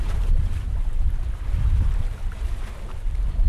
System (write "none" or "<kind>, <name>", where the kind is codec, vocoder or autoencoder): vocoder, BigVGAN v2